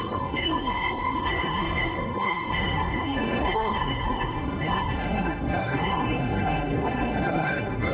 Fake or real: fake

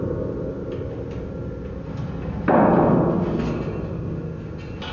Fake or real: real